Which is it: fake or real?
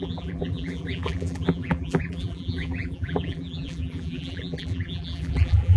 fake